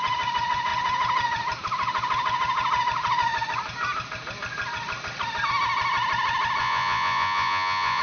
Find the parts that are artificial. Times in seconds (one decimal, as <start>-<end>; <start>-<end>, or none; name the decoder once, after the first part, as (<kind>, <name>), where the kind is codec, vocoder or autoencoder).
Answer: 6.6-8.0 (vocoder, Vocos)